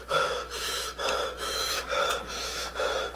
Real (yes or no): no